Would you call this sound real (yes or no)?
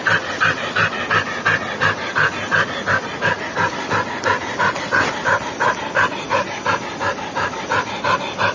yes